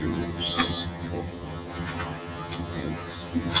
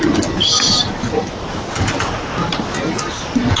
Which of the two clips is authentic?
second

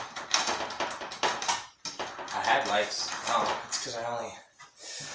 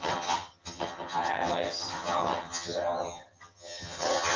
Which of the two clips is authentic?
first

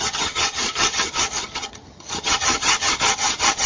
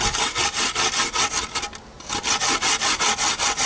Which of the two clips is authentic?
second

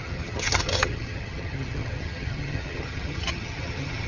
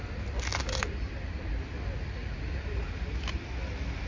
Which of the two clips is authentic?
second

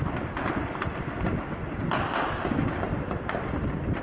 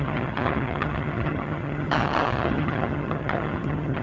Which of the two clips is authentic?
first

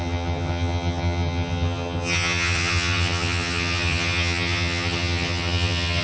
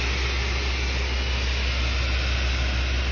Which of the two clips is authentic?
second